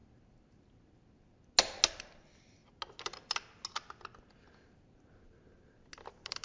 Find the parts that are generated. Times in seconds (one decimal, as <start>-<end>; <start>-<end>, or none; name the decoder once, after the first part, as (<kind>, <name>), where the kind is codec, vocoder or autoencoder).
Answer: none